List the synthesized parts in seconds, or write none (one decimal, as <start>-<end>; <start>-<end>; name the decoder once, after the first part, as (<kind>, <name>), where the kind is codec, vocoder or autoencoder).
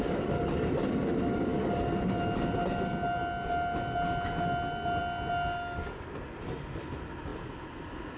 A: none